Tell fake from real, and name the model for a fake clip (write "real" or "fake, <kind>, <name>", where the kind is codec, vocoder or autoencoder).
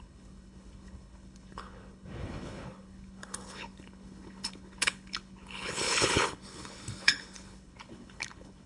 fake, codec, HILCodec